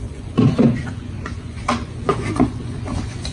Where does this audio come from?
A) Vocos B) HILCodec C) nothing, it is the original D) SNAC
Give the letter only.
A